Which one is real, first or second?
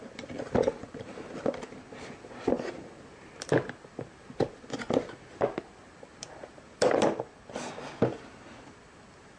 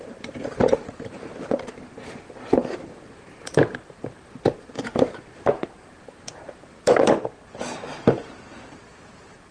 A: first